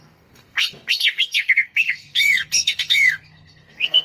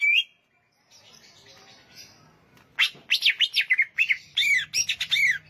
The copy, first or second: first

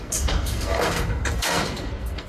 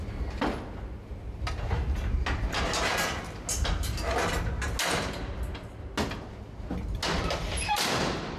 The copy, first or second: first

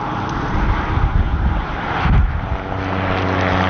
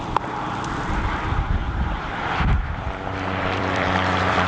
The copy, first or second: second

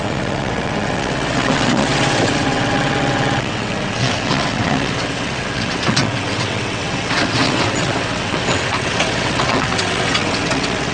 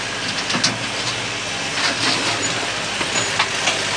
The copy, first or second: first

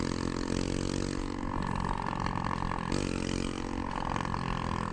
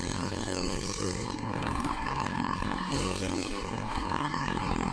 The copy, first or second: second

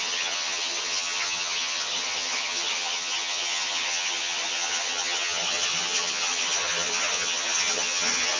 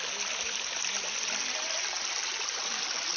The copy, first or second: first